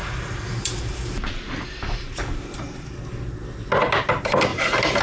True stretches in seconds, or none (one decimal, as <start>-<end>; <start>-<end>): 3.0-4.5